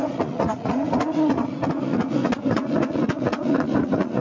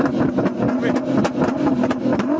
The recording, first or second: second